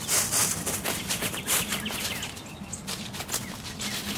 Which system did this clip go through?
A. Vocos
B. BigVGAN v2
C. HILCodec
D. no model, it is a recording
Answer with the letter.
D